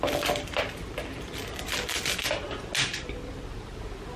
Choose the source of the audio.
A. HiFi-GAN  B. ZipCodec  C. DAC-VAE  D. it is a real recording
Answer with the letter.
D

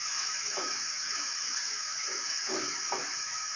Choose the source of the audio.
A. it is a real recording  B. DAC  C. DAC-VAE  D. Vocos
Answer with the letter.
C